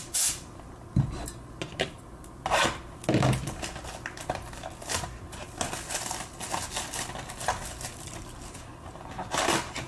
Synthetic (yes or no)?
no